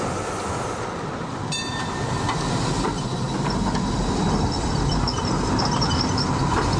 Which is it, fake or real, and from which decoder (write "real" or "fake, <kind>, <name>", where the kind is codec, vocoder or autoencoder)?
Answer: real